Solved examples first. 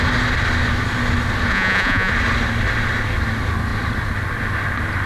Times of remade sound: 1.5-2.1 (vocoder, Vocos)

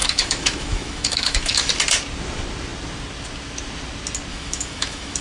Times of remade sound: 0.0-1.7 (autoencoder, DAC-VAE); 4.3-5.2

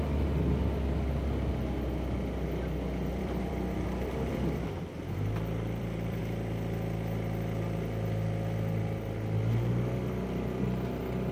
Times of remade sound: 3.1-6.2 (vocoder, BigVGAN v2)

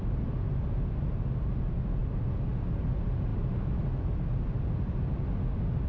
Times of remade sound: none

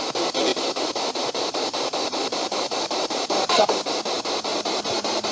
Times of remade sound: 0.5-3.7 (vocoder, BigVGAN v2); 4.5-5.3

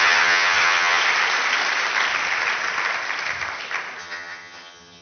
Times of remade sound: 0.0-1.0 (vocoder, HiFi-GAN); 4.0-5.0

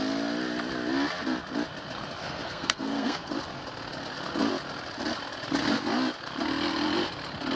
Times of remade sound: 2.2-3.3 (codec, SNAC)